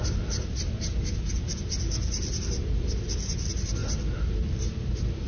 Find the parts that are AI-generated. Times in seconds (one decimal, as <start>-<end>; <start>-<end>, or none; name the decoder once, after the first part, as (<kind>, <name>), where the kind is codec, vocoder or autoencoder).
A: none